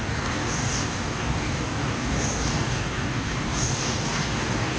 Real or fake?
fake